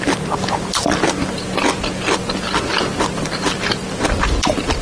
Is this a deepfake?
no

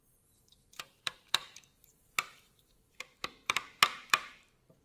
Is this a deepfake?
yes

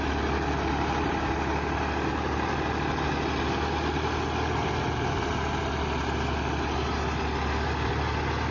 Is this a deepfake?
no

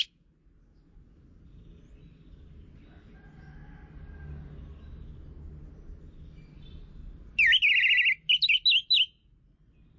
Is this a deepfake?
no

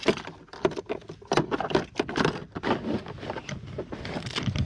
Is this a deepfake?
no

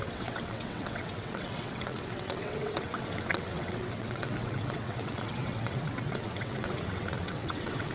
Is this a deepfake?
yes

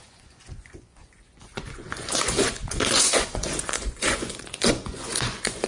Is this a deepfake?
yes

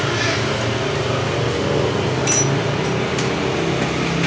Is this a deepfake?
no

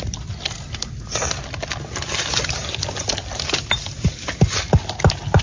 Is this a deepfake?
no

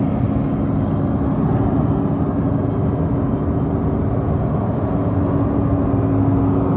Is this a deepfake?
no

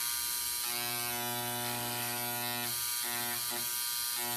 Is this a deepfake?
no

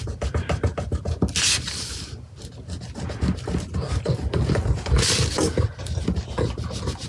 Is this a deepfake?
no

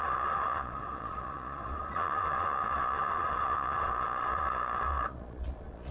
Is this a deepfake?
yes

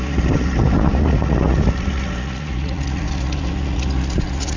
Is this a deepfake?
yes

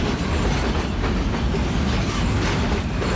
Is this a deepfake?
no